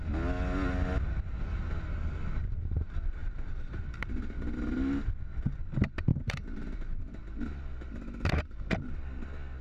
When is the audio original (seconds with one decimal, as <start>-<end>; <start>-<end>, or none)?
0.0-3.2; 3.8-6.1; 7.2-9.6